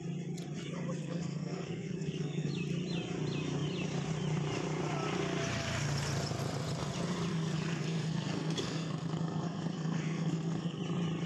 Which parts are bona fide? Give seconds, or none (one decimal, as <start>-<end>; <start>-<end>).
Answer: 0.0-1.0; 2.5-7.3; 10.8-11.3